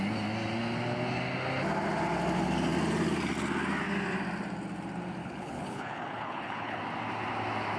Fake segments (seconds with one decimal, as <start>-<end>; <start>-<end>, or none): 5.2-6.8